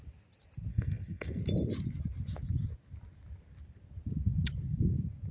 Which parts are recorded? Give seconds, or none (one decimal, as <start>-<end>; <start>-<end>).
0.0-0.7; 1.4-5.3